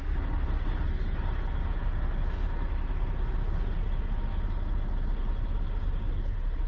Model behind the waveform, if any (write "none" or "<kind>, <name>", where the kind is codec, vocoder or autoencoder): none